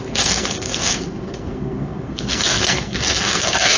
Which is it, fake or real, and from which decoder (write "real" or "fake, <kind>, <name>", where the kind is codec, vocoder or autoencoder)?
fake, codec, SNAC